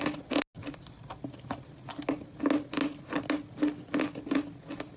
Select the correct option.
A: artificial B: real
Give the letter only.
B